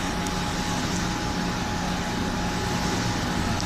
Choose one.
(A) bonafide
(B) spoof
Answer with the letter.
A